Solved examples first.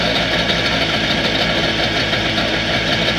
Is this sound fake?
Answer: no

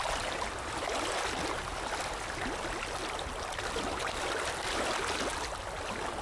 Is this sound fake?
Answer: no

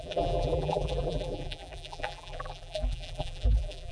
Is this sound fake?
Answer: yes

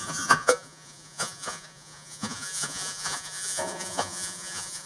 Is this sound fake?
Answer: yes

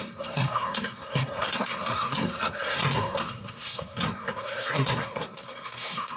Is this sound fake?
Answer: yes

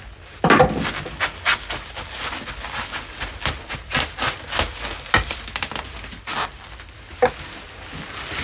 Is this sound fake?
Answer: no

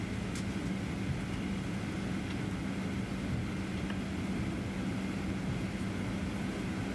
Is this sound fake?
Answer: no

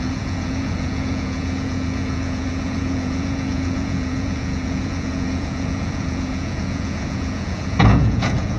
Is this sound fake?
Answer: yes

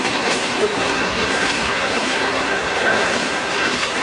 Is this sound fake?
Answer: yes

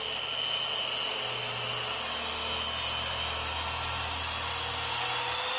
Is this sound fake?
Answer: no